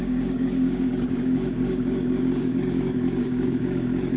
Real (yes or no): no